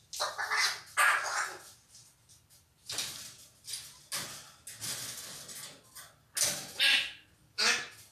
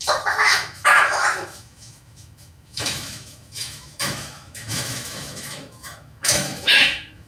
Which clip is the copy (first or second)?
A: second